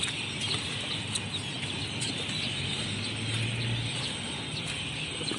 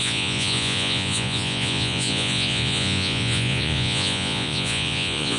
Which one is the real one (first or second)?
first